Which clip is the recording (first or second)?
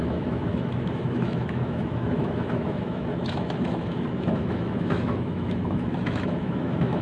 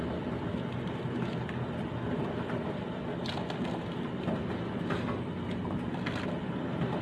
second